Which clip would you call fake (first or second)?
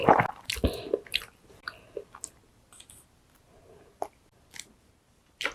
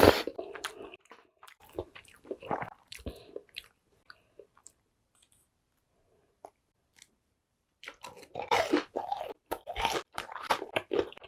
second